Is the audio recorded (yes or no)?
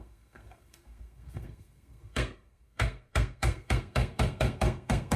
no